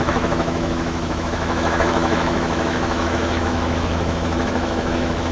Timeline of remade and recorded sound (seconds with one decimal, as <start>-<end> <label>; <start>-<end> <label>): 0.0-5.3 remade